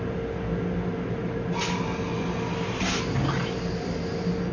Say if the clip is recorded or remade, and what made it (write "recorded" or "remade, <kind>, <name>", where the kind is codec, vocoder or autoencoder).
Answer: recorded